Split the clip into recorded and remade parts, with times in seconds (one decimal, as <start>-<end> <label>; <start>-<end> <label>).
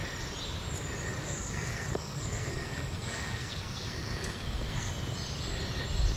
0.0-1.2 recorded; 1.2-4.9 remade; 4.9-6.2 recorded